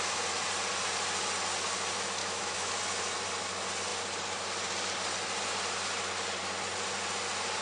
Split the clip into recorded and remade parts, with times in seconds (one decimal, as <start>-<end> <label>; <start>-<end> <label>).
0.0-2.2 recorded; 2.2-2.7 remade; 2.7-7.6 recorded